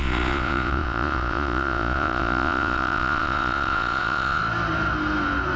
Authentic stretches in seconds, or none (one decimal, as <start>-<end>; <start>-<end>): 4.4-5.6